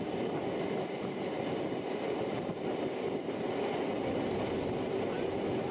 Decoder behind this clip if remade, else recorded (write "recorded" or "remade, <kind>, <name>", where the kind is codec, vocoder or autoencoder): recorded